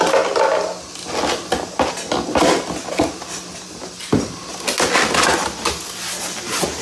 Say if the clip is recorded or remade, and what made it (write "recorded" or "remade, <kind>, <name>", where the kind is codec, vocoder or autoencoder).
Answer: recorded